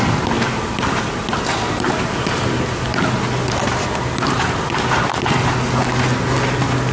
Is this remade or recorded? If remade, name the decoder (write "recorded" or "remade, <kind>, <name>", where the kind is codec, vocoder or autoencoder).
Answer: recorded